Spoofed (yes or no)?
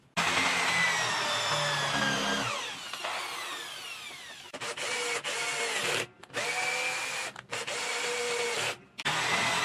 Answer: no